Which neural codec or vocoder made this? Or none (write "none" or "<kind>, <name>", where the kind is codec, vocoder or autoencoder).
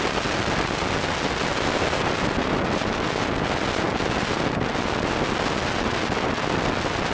none